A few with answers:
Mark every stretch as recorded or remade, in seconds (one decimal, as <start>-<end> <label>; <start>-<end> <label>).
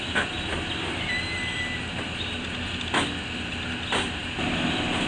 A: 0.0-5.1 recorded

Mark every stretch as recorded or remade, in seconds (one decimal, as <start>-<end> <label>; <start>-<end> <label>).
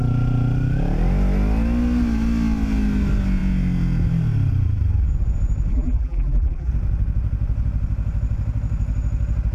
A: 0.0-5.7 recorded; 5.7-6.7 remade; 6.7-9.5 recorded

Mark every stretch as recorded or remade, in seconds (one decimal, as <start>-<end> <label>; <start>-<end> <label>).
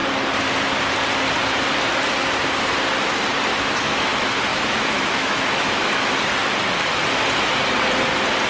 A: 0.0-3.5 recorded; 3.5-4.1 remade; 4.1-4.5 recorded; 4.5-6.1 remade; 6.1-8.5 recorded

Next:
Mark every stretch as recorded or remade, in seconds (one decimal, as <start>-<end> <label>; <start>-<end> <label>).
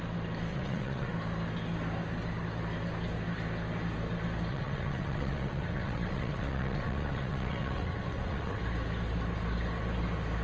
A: 0.0-0.5 recorded; 0.5-1.1 remade; 1.1-4.5 recorded; 4.5-8.6 remade; 8.6-10.4 recorded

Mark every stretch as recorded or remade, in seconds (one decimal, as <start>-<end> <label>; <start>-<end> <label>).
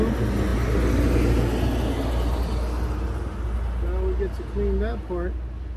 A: 0.0-5.8 recorded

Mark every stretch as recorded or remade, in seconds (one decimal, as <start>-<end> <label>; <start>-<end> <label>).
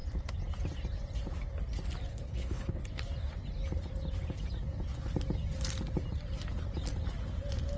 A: 0.0-2.1 recorded; 2.1-2.8 remade; 2.8-7.8 recorded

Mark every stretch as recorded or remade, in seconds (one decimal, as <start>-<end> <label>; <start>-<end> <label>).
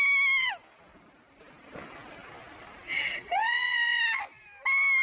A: 0.0-2.9 recorded; 2.9-4.0 remade; 4.0-5.0 recorded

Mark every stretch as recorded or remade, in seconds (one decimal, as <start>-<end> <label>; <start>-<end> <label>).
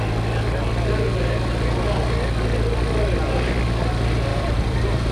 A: 0.0-4.3 recorded; 4.3-5.1 remade